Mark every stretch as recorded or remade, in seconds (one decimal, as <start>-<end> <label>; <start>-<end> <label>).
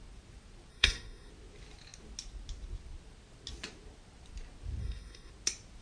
0.0-0.7 recorded; 0.7-1.3 remade; 1.3-4.8 recorded; 4.8-5.3 remade; 5.3-5.8 recorded